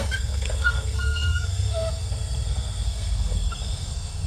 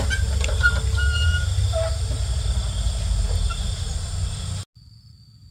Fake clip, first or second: first